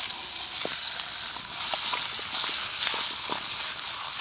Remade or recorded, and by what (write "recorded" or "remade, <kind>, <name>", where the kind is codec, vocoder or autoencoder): recorded